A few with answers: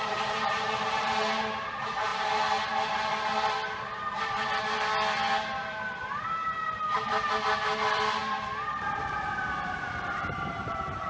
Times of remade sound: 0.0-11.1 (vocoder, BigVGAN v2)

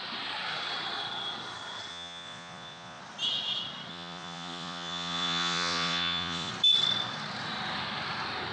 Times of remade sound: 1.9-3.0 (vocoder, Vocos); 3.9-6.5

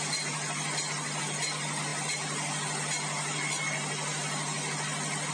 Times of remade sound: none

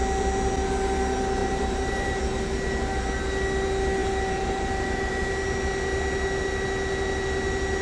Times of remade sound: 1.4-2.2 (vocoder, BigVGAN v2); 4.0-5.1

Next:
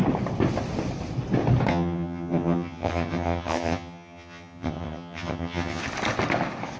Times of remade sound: 1.7-5.8 (vocoder, HiFi-GAN)